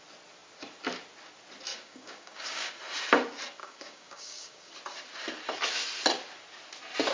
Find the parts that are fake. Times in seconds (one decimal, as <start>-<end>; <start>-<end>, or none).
1.7-2.8; 3.6-4.7